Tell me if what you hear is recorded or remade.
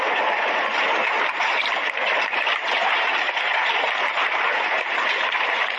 remade